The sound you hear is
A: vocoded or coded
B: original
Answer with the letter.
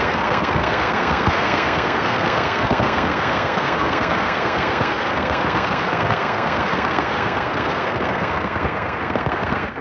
A